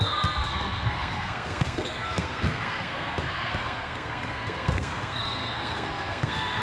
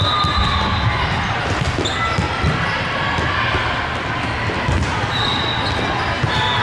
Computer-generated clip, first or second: first